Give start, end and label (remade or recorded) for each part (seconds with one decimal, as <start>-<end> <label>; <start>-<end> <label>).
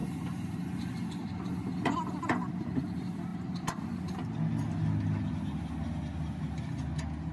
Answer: 0.0-7.3 recorded